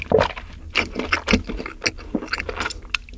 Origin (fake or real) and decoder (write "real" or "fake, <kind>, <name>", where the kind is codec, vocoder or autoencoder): real